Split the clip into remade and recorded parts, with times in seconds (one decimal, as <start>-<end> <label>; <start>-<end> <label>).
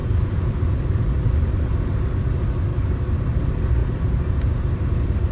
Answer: 0.0-0.5 remade; 0.5-3.8 recorded; 3.8-4.7 remade; 4.7-5.3 recorded